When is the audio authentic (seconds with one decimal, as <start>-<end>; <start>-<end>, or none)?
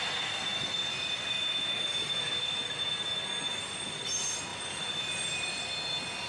0.0-4.5; 5.7-6.3